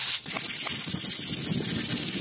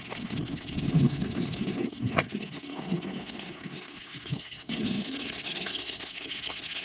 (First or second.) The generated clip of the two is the second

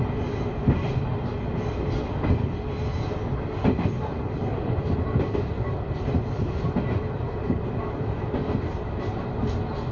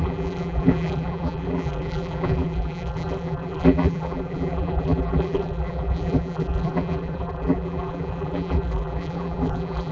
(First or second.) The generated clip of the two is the second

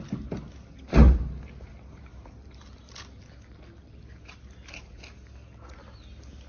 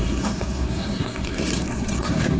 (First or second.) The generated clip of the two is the second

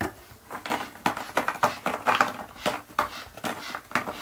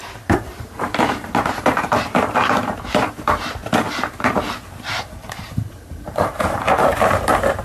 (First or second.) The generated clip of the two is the second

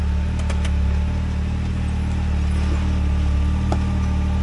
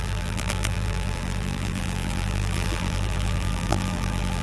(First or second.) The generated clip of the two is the second